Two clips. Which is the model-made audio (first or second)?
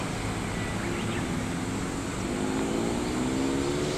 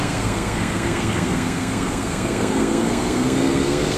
second